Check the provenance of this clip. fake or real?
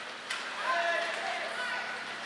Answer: real